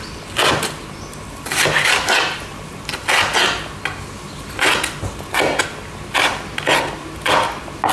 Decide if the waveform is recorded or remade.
recorded